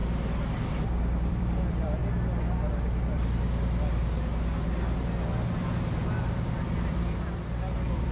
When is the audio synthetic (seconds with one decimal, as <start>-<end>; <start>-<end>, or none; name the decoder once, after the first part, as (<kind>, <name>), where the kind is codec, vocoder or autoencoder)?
1.3-2.0 (vocoder, BigVGAN v2); 6.8-8.1

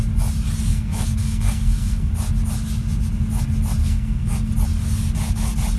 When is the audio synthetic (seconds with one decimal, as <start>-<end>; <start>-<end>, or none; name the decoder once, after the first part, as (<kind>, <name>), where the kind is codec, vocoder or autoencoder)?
0.7-2.1 (codec, SNAC); 3.8-4.5

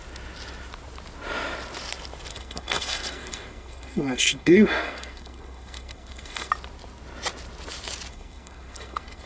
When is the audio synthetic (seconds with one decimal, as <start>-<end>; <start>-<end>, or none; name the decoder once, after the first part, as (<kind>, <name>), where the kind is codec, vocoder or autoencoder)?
2.3-6.5 (codec, SNAC); 8.1-9.3

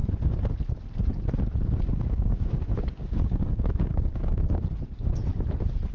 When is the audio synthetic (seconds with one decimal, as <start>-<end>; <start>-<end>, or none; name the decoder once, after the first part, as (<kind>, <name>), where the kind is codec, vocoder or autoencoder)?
1.9-4.6 (codec, DAC)

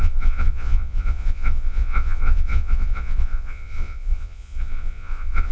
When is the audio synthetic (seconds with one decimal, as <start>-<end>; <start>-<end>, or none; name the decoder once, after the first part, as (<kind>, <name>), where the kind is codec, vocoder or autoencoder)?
0.0-5.5 (vocoder, Vocos)

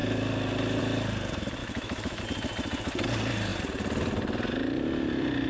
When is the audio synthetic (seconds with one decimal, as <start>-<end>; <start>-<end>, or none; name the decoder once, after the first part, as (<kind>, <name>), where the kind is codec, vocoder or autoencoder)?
1.6-2.2 (autoencoder, DAC-VAE)

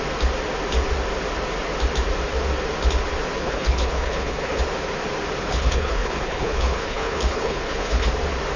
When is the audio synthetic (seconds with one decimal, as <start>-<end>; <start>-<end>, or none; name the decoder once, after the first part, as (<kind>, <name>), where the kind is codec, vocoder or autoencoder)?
3.4-4.6 (codec, HILCodec); 5.4-8.1

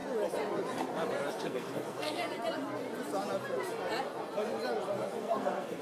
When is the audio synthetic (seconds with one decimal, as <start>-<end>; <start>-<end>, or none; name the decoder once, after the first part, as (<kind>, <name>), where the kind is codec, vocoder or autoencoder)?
1.3-2.2 (codec, SNAC); 5.2-5.8